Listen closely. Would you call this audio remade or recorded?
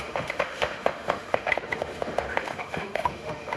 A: remade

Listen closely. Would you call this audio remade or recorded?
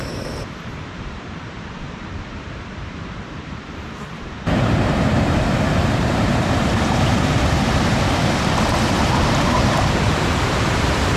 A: remade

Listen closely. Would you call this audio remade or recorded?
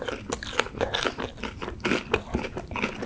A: recorded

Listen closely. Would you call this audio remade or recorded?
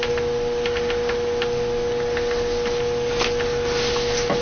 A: recorded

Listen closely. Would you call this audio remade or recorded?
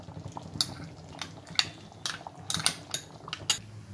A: recorded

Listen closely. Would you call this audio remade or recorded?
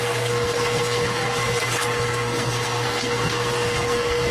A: remade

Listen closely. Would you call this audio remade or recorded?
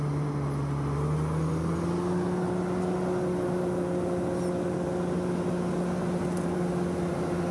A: recorded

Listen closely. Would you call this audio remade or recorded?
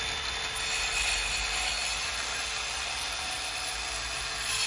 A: recorded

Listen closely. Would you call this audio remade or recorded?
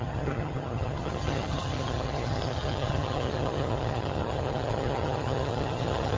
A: remade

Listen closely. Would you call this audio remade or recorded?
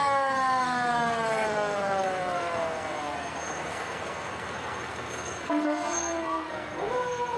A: remade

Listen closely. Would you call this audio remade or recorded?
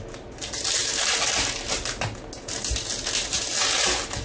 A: recorded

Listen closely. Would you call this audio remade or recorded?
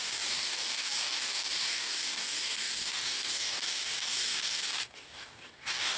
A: remade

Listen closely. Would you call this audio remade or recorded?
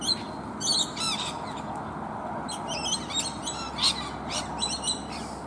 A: recorded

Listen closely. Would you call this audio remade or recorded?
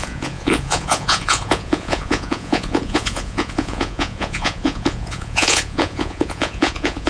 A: remade